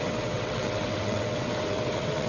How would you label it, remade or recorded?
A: remade